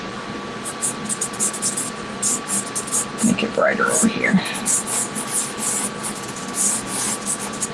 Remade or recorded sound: recorded